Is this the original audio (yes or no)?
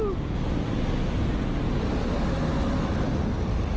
yes